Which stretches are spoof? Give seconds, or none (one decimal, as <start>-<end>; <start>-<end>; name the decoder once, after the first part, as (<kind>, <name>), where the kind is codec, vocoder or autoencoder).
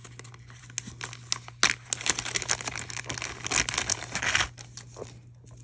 none